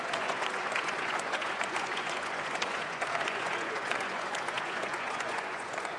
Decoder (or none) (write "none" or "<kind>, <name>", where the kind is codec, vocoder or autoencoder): vocoder, Vocos